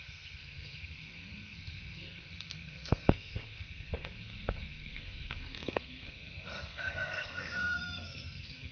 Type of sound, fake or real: fake